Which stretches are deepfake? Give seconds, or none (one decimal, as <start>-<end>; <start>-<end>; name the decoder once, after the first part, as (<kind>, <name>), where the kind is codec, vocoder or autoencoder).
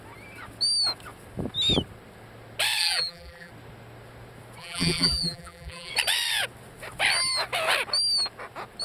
2.8-3.5 (vocoder, BigVGAN v2); 4.6-5.9